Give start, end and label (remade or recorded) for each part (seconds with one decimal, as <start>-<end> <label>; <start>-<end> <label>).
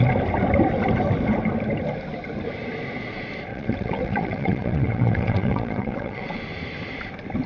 0.0-3.5 recorded; 3.5-6.4 remade; 6.4-7.5 recorded